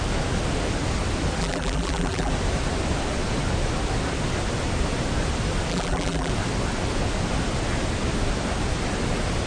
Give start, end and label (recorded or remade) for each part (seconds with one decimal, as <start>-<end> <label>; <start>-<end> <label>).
0.0-1.4 recorded; 1.4-2.3 remade; 2.3-5.7 recorded; 5.7-6.3 remade; 6.3-9.5 recorded